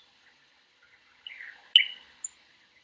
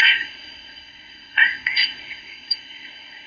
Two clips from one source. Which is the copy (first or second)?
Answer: second